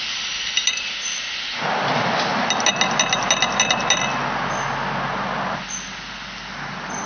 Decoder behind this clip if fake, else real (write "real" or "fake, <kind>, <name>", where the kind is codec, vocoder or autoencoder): real